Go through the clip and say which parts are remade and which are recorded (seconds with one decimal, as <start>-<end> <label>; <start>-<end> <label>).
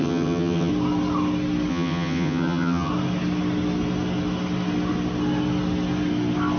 0.0-0.7 remade; 0.7-1.7 recorded; 1.7-2.9 remade; 2.9-6.6 recorded